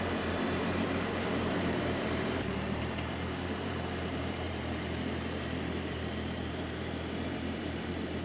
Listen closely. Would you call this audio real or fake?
fake